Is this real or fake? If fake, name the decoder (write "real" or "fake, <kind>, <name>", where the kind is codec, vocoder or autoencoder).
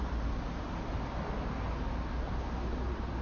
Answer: real